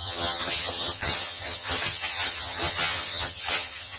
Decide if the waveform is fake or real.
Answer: fake